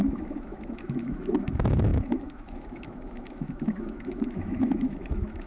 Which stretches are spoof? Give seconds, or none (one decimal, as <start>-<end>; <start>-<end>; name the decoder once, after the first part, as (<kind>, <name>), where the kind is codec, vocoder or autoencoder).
0.0-5.5 (autoencoder, DAC-VAE)